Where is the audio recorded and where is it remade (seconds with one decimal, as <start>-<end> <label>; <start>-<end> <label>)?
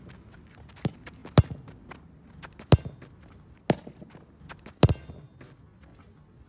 0.0-6.5 recorded